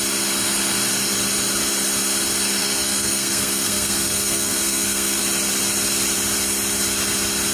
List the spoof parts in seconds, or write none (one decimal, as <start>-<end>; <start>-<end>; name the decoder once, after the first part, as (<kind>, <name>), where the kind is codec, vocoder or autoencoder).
2.6-5.2 (codec, SNAC)